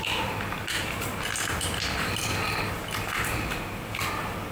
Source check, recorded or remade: recorded